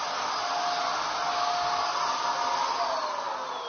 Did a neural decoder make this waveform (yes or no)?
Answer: no